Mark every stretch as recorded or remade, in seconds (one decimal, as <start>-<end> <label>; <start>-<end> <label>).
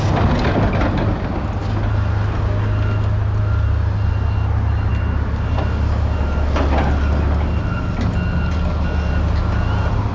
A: 0.0-10.1 recorded